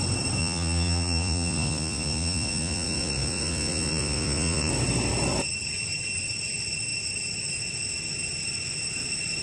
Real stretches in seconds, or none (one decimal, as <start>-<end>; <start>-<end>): 0.0-0.4; 4.7-9.4